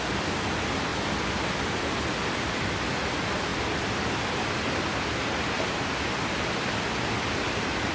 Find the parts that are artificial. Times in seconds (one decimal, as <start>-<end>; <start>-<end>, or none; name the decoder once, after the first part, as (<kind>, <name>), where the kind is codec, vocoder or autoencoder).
none